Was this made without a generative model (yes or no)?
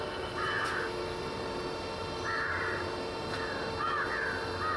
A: yes